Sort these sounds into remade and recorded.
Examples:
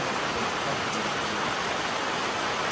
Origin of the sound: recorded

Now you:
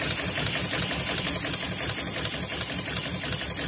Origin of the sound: recorded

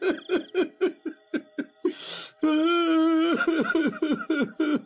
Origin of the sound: recorded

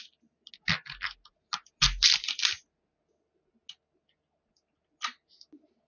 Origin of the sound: recorded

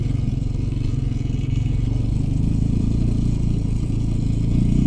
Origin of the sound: remade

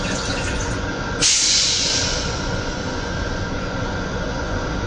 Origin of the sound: remade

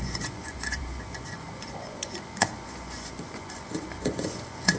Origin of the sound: remade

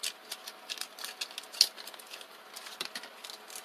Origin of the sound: recorded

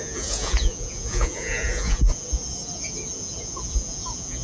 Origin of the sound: remade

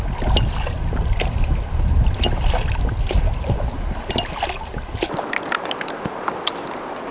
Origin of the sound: recorded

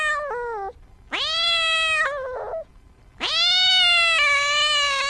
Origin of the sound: recorded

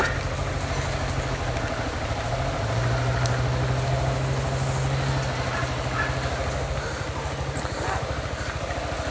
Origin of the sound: recorded